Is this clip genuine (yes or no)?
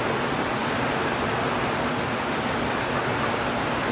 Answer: yes